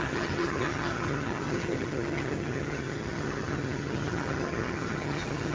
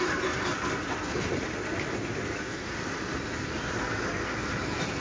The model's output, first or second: first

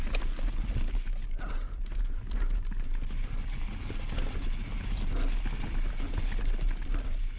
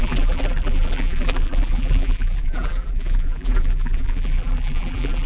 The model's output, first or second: second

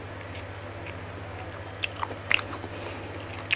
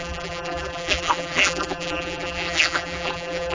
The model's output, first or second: second